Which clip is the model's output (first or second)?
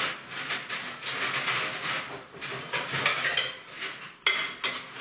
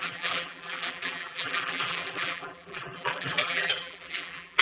second